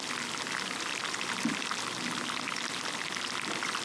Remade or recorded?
recorded